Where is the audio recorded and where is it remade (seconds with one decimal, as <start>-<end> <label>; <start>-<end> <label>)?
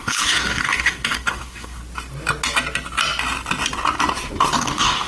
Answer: 0.0-1.8 remade; 1.8-4.6 recorded; 4.6-5.1 remade